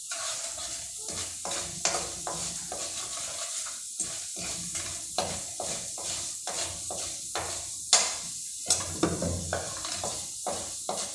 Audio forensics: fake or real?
real